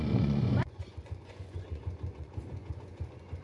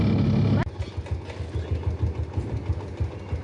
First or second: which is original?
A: second